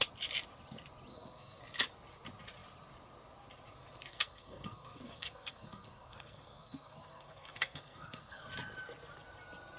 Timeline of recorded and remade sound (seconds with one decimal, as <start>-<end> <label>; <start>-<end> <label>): 0.0-1.1 recorded; 1.1-1.6 remade; 1.6-4.1 recorded; 4.1-8.5 remade; 8.5-9.8 recorded